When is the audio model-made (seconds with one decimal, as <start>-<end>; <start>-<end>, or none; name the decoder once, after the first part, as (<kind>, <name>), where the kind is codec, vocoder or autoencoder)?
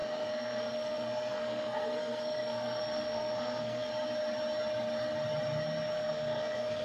0.0-3.9 (codec, SNAC); 5.9-6.8